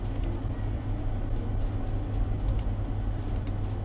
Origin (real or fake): real